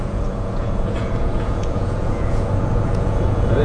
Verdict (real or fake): fake